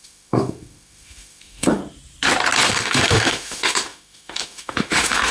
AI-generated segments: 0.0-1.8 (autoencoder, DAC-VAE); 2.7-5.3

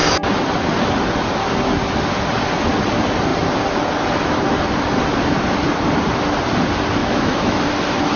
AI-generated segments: 7.0-7.6 (autoencoder, DAC-VAE)

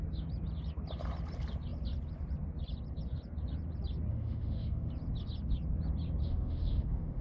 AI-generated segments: 4.1-4.9 (autoencoder, DAC-VAE); 6.2-7.2

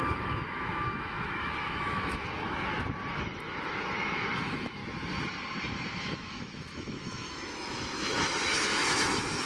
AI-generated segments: 0.0-4.8 (autoencoder, DAC-VAE); 5.9-9.5

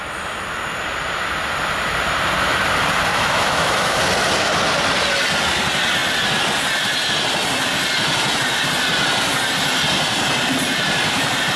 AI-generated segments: 3.1-4.0 (autoencoder, DAC-VAE)

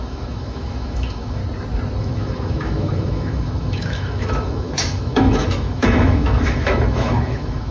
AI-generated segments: 0.0-1.4 (autoencoder, DAC-VAE); 2.0-7.7

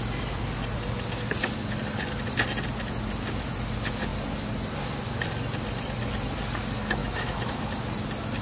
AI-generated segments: 7.0-7.7 (autoencoder, DAC-VAE)

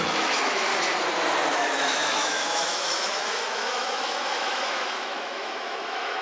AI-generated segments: 0.0-0.7 (autoencoder, DAC-VAE); 1.5-6.2